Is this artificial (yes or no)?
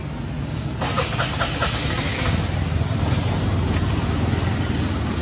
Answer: no